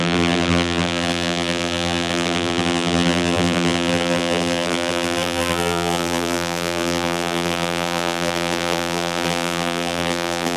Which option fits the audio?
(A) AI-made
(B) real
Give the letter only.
A